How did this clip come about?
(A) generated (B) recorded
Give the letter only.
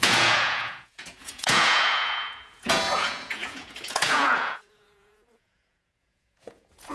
A